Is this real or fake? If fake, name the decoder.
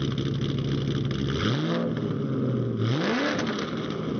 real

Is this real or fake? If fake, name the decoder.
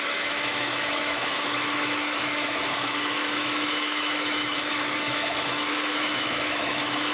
fake, autoencoder, DAC-VAE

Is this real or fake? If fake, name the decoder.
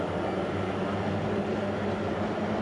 real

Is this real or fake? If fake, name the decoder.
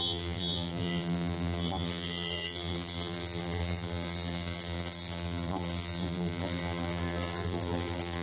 fake, vocoder, BigVGAN v2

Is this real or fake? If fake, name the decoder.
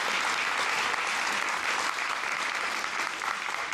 real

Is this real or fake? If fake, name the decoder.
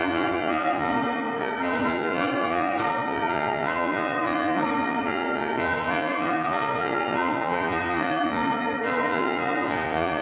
fake, vocoder, Vocos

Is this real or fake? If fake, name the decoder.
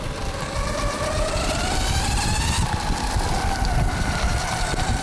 fake, vocoder, BigVGAN v2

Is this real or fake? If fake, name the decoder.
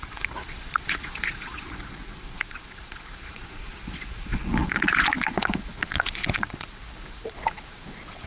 fake, vocoder, Vocos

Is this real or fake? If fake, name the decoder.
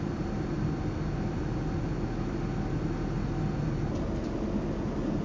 real